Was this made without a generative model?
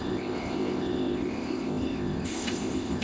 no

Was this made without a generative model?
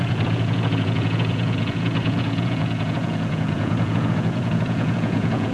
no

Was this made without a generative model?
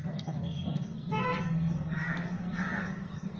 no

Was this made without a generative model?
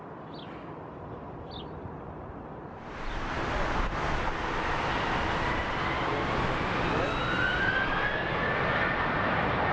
yes